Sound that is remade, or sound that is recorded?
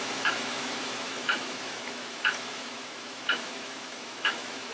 remade